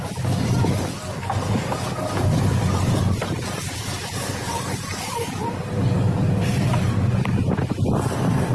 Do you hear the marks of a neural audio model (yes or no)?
no